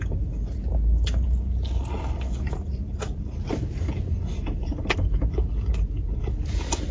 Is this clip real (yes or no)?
yes